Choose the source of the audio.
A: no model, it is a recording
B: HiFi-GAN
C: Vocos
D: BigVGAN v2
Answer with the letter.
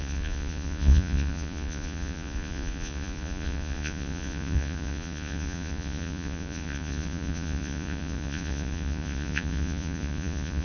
C